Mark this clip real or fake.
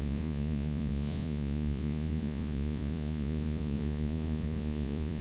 fake